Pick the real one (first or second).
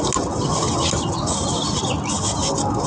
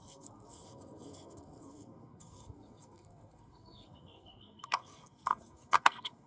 first